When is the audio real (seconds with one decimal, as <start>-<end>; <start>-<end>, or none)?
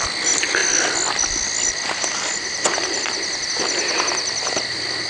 0.0-5.1